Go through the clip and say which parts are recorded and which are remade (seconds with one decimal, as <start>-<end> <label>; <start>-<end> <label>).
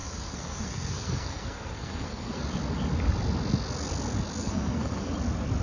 0.0-2.4 remade; 2.4-4.4 recorded; 4.4-5.1 remade; 5.1-5.6 recorded